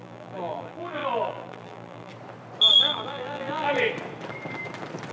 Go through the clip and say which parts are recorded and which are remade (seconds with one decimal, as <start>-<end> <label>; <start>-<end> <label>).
0.0-2.1 remade; 2.1-2.7 recorded; 2.7-3.7 remade; 3.7-5.1 recorded